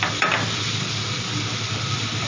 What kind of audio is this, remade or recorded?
recorded